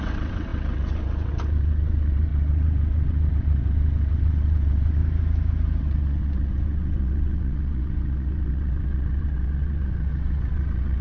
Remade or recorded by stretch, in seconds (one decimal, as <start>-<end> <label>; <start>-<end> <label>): 0.0-5.0 remade; 5.0-5.8 recorded; 5.8-11.0 remade